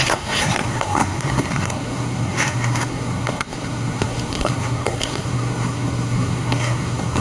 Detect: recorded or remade remade